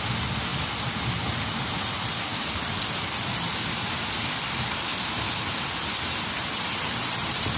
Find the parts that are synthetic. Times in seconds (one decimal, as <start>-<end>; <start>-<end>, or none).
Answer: 0.0-2.3; 3.3-4.9; 5.6-7.6

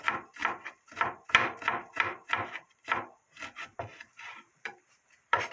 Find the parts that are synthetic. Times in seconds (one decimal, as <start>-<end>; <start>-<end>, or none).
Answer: 0.4-3.4; 3.9-5.5

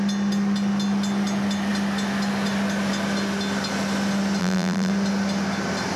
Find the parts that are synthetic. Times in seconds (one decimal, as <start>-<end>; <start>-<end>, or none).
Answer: 4.4-4.9

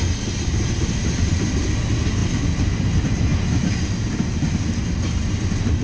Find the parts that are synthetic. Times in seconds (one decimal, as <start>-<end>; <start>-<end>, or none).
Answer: none

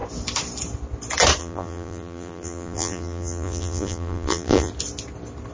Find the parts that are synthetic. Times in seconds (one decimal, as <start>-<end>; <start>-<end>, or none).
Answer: 1.4-4.7

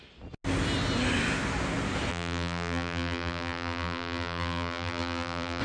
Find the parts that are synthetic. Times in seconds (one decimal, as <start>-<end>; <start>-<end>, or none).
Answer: 2.1-5.6